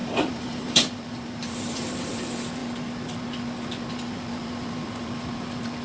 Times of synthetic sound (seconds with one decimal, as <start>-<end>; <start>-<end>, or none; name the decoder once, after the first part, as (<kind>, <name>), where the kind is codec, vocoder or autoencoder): 0.0-2.2 (vocoder, BigVGAN v2)